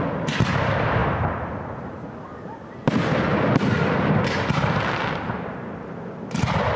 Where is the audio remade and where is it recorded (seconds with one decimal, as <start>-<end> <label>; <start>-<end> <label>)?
0.0-6.8 recorded